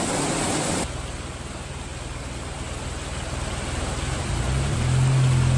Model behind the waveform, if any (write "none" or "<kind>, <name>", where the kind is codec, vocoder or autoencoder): none